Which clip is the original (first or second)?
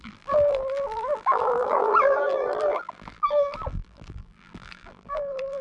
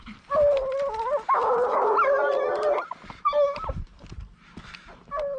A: second